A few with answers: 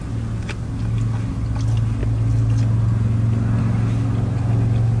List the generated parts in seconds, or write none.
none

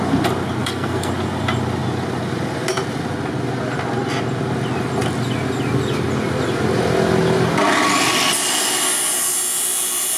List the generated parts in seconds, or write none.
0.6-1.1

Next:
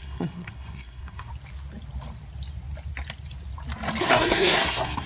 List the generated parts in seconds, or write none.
0.0-1.3; 4.0-5.1

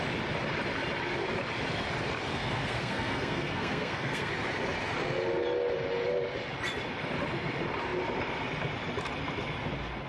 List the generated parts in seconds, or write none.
2.3-4.3